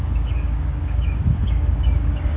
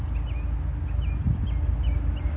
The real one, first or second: second